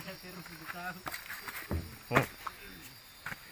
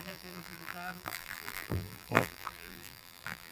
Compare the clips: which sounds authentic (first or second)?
first